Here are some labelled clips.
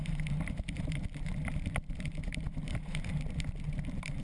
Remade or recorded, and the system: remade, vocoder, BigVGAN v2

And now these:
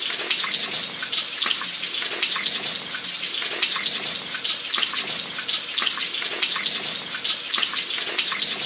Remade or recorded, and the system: recorded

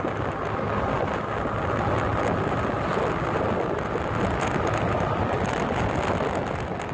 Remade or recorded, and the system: recorded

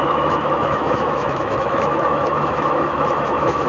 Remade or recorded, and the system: remade, autoencoder, DAC-VAE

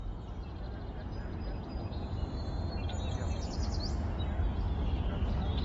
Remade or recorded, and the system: recorded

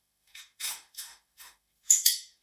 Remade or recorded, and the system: remade, autoencoder, DAC-VAE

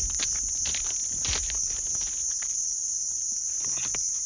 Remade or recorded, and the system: recorded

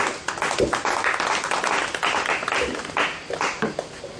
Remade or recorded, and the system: recorded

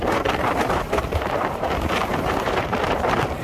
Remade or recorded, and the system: remade, vocoder, BigVGAN v2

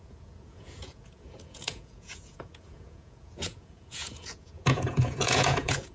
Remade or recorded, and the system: remade, vocoder, Vocos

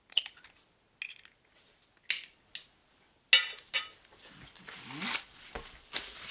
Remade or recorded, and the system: recorded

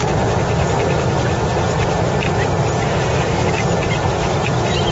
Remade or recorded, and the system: recorded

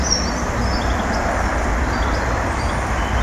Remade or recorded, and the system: recorded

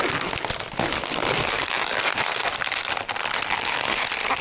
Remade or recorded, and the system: recorded